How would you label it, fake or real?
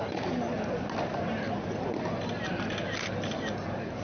real